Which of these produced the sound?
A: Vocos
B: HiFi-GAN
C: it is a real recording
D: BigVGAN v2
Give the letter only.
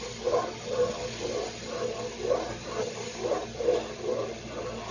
C